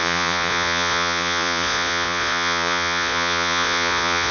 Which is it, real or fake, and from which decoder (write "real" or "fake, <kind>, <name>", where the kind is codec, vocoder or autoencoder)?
fake, vocoder, Vocos